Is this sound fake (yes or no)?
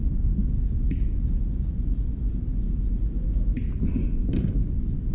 no